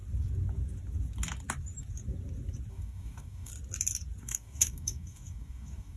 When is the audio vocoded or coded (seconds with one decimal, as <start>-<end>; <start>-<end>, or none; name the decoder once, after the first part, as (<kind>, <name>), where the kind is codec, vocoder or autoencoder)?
2.7-3.5 (codec, DAC); 4.2-6.0